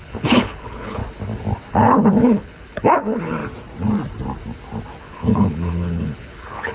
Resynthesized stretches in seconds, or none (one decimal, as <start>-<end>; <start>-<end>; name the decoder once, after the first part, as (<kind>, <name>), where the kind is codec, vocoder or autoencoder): 0.0-1.0 (codec, HILCodec); 1.7-3.4; 5.0-6.7